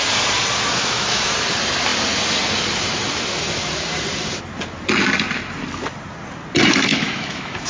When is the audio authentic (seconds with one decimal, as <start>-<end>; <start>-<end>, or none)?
0.0-0.8; 1.3-6.9